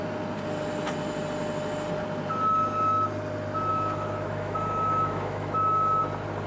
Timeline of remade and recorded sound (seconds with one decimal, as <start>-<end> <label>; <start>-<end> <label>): 0.0-3.7 recorded; 3.7-6.0 remade; 6.0-6.5 recorded